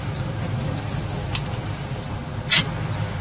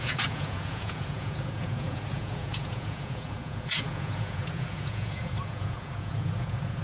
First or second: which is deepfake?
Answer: second